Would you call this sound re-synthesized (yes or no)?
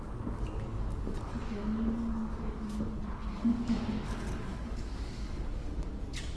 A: yes